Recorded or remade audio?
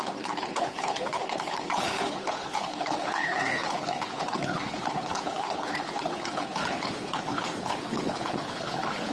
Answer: remade